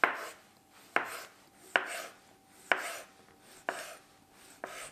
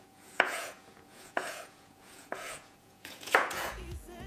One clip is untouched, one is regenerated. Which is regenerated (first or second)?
second